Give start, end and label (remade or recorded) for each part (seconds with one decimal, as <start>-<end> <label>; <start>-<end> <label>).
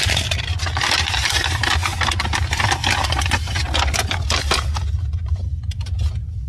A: 0.0-6.5 recorded